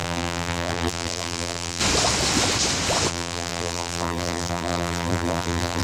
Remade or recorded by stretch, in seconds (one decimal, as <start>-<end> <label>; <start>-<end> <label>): 0.0-1.8 remade; 1.8-3.1 recorded; 3.1-5.8 remade